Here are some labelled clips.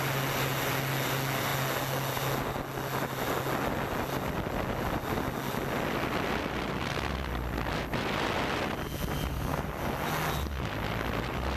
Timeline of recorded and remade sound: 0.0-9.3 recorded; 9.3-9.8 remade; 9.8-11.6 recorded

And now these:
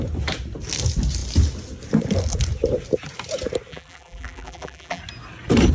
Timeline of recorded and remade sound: 0.0-3.7 recorded; 3.7-5.0 remade; 5.0-5.7 recorded

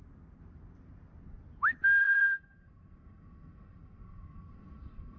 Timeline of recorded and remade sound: 0.0-2.0 recorded; 2.0-5.2 remade